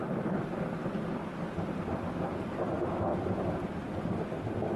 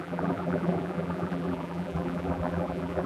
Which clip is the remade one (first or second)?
second